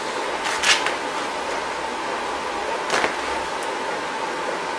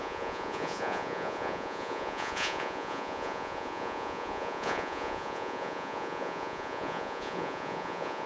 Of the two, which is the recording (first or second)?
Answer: first